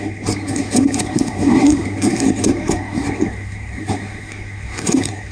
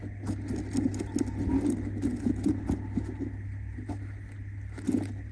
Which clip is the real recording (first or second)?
second